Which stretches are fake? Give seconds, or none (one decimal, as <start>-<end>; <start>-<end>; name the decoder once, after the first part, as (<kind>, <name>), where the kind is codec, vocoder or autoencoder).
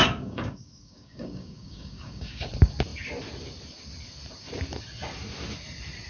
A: 0.0-2.5 (codec, DAC)